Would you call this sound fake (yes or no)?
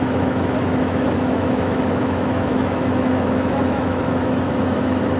yes